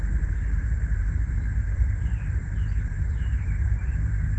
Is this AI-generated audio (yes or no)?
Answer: yes